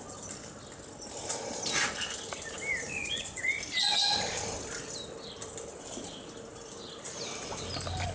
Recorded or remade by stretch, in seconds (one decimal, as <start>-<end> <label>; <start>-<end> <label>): 0.0-3.0 recorded; 3.0-3.6 remade; 3.6-8.1 recorded